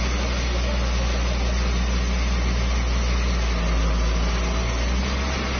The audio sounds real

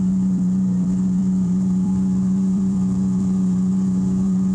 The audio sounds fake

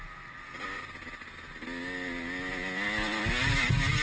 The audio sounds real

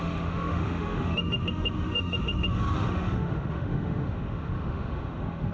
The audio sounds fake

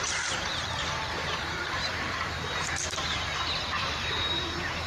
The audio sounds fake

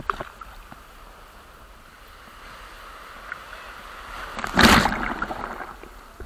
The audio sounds real